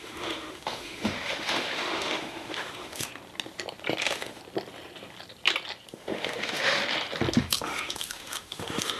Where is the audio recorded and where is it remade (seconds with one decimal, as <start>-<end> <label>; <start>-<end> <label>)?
0.0-3.1 remade; 3.1-4.0 recorded; 4.0-4.4 remade; 4.4-5.9 recorded; 5.9-6.8 remade; 6.8-7.4 recorded; 7.4-9.0 remade